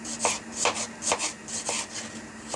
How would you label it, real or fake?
real